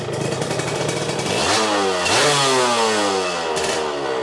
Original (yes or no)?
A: yes